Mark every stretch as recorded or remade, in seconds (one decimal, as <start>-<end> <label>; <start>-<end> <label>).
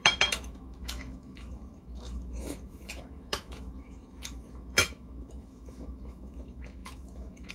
0.0-7.5 remade